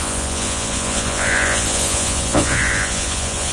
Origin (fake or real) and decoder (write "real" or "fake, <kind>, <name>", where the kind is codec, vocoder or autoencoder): fake, vocoder, Vocos